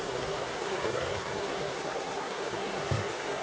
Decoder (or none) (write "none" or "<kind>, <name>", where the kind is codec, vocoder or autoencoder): codec, SNAC